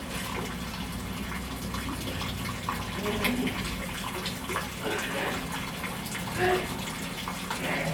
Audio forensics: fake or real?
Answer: real